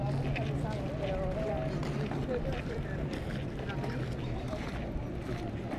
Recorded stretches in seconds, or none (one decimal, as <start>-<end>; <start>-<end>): 0.0-2.2; 4.7-5.8